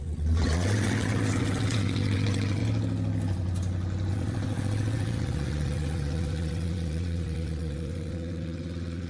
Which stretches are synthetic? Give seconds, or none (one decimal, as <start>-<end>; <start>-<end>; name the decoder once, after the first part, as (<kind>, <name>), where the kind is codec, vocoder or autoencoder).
0.0-2.6 (vocoder, WaveNeXt); 4.1-9.1